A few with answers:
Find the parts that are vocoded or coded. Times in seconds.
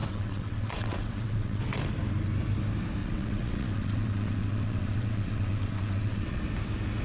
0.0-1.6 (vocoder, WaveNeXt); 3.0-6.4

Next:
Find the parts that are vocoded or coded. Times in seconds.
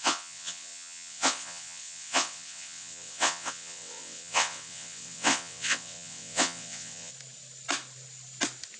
0.0-7.1 (vocoder, WaveNeXt)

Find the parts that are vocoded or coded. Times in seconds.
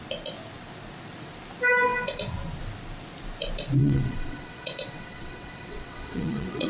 3.8-6.7 (vocoder, WaveNeXt)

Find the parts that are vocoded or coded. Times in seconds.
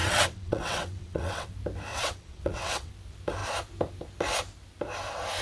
0.0-1.5 (vocoder, WaveNeXt); 1.9-2.9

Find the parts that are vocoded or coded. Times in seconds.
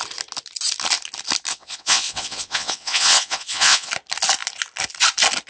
1.5-3.9 (vocoder, WaveNeXt)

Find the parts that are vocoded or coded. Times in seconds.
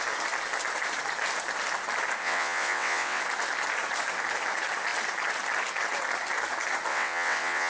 2.2-3.2 (vocoder, WaveNeXt); 6.9-7.7